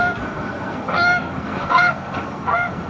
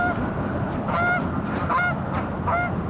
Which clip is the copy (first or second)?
first